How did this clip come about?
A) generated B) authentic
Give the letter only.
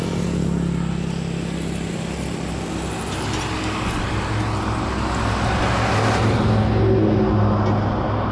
B